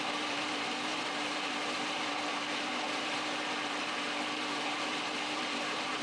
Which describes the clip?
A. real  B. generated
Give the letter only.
B